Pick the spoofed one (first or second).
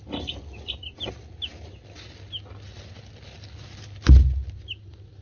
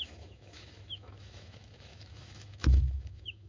second